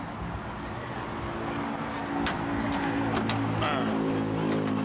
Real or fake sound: real